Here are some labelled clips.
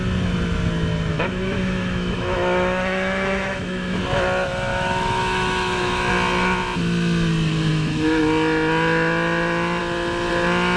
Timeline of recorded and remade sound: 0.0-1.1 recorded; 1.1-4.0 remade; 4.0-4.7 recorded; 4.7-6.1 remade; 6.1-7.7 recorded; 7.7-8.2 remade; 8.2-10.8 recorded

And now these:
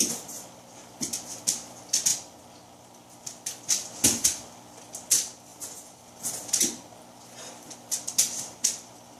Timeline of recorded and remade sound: 0.0-9.2 recorded